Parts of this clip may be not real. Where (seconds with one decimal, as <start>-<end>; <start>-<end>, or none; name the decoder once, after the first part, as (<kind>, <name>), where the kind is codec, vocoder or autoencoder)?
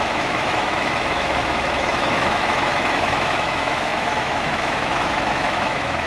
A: 0.0-6.1 (autoencoder, DAC-VAE)